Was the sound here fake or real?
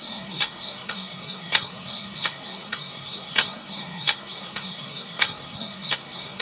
fake